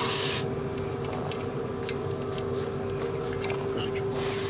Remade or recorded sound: recorded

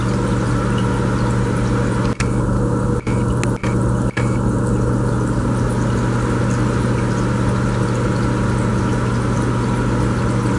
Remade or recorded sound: recorded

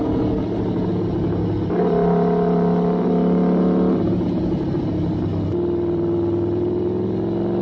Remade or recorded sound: recorded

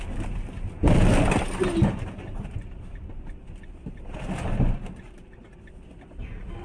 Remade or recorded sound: recorded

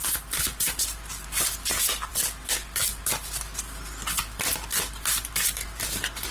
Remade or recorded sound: remade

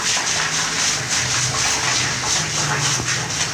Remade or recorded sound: recorded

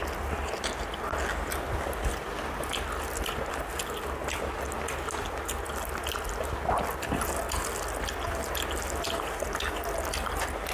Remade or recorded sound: recorded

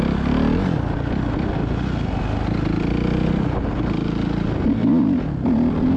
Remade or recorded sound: recorded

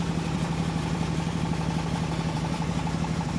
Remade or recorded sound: remade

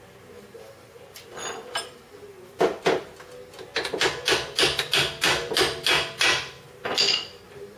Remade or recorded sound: recorded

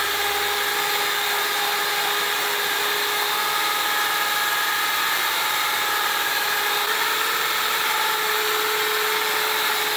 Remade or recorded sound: remade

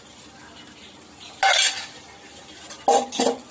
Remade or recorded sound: recorded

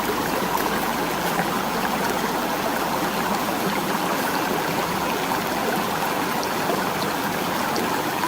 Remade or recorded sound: remade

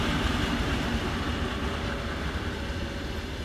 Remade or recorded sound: recorded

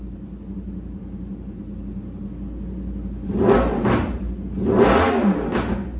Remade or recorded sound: recorded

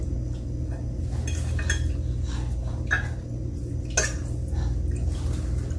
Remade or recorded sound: recorded